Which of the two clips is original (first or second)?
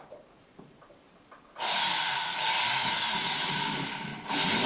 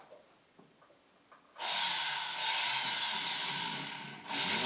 second